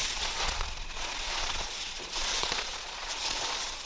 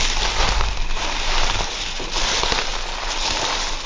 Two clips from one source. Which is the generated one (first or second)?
first